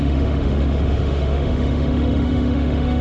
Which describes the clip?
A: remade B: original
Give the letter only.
A